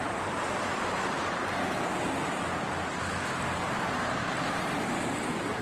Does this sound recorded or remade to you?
remade